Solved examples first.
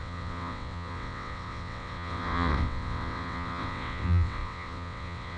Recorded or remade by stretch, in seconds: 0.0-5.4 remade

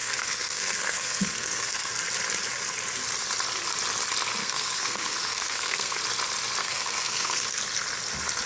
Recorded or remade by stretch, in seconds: 0.0-1.9 remade; 1.9-4.4 recorded; 4.4-6.0 remade; 6.0-6.6 recorded; 6.6-7.6 remade; 7.6-8.5 recorded